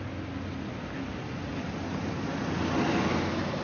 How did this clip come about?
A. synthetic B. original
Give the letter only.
B